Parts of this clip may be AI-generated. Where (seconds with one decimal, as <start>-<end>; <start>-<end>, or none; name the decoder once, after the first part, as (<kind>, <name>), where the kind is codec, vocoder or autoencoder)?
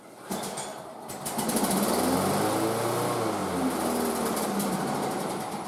0.7-1.5 (vocoder, BigVGAN v2); 3.4-5.7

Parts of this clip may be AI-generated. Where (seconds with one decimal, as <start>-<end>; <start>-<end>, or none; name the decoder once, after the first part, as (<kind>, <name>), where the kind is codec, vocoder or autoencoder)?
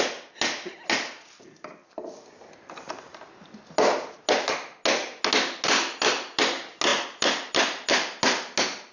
none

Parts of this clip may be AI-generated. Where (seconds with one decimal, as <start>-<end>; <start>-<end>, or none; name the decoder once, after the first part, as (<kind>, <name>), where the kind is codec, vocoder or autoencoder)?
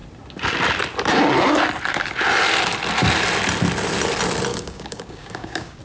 4.5-5.8 (codec, DAC)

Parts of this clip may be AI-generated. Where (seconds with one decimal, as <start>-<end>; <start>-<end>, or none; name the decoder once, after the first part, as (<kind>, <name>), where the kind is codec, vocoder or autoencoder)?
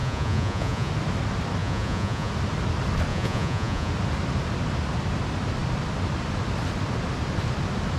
0.0-0.9 (vocoder, Vocos); 1.6-2.3; 3.1-3.9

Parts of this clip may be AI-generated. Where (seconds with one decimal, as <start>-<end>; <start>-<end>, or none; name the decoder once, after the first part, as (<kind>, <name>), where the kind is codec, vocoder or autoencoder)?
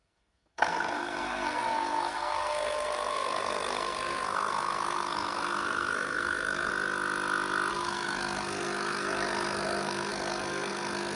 0.0-6.7 (codec, SNAC); 7.7-11.2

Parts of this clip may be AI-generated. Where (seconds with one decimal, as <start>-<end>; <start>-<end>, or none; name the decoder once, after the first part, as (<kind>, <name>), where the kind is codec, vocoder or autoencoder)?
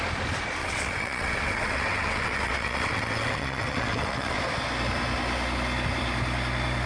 0.6-4.4 (vocoder, WaveNeXt)